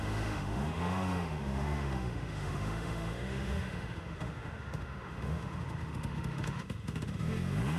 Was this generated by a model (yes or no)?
yes